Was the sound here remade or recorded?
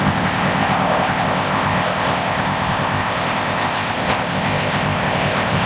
remade